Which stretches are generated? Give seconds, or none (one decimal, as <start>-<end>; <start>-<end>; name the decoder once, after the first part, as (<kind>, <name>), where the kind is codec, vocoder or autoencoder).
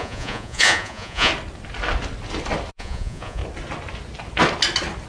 0.0-1.3 (vocoder, Vocos); 2.7-3.4